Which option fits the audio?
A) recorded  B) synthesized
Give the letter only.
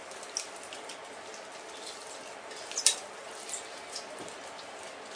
A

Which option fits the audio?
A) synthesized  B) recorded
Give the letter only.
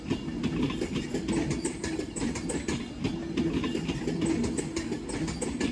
B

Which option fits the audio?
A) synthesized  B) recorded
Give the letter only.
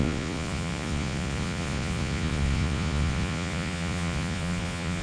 A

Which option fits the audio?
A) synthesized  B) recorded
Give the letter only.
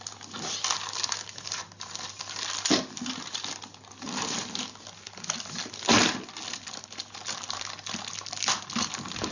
B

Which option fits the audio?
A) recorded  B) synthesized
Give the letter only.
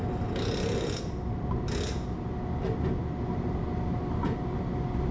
A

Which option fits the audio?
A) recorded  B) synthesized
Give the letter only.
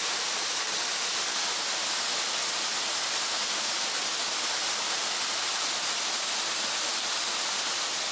A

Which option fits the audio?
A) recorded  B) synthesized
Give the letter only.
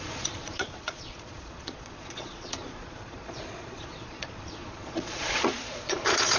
B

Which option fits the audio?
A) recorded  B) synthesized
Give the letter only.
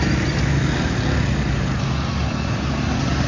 A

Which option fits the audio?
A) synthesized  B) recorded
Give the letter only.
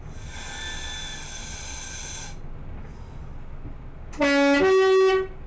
B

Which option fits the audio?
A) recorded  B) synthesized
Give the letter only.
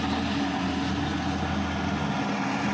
A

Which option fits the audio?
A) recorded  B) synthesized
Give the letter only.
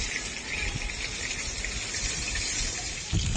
A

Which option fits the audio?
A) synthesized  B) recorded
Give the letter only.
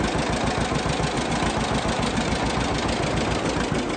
B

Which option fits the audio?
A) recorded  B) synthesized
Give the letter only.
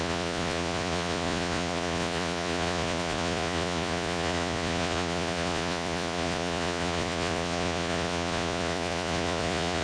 B